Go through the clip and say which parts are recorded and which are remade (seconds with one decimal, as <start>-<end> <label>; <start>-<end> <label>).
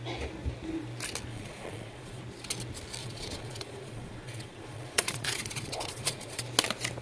0.0-1.3 recorded; 1.3-2.2 remade; 2.2-3.0 recorded; 3.0-6.4 remade; 6.4-7.0 recorded